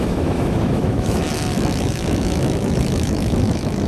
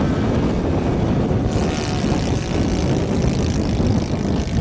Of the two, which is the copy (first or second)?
first